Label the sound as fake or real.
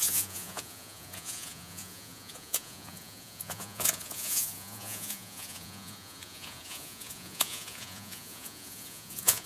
fake